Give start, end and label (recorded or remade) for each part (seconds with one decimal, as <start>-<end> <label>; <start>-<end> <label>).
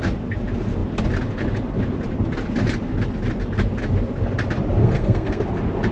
0.0-4.8 recorded; 4.8-5.4 remade; 5.4-5.9 recorded